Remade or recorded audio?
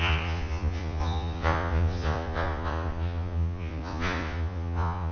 remade